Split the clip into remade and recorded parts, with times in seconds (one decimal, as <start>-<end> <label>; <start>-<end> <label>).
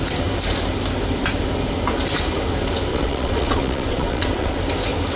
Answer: 0.0-2.9 recorded; 2.9-4.6 remade; 4.6-5.2 recorded